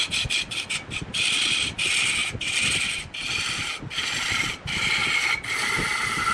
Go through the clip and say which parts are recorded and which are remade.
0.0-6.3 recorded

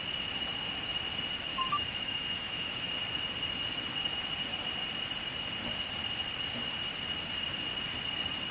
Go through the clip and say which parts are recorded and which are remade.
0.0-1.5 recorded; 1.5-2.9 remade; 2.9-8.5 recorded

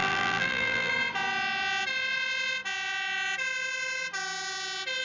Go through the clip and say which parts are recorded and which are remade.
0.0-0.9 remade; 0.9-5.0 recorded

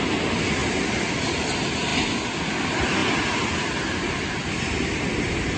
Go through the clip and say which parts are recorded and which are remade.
0.0-5.6 recorded

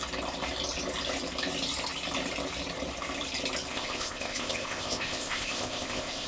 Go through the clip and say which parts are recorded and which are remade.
0.0-3.7 recorded; 3.7-6.3 remade